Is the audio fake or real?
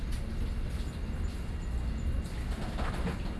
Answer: real